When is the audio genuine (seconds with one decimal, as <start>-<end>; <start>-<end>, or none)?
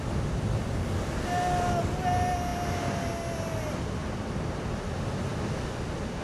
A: 0.0-6.2